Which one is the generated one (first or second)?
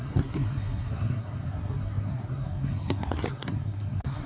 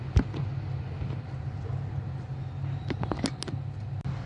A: first